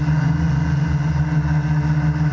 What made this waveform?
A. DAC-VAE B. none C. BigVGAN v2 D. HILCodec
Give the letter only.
B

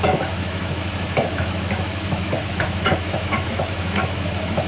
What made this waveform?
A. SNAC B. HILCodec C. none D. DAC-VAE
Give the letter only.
D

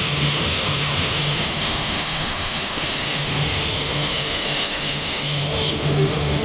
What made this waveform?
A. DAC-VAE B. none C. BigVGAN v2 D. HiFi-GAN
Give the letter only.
A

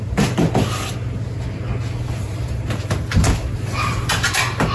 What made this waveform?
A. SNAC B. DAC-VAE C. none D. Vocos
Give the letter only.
C